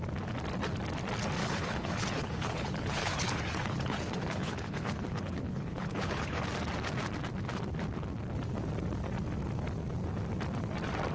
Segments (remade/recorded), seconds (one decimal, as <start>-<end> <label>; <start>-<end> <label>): 0.0-1.4 recorded; 1.4-6.4 remade; 6.4-11.1 recorded